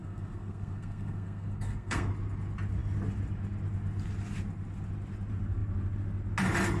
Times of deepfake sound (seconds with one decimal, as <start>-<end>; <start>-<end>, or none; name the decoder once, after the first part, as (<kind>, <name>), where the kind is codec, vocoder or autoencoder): 0.0-2.1 (codec, SNAC)